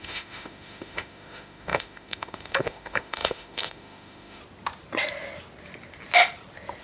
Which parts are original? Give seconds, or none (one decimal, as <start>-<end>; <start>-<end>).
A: 4.4-6.8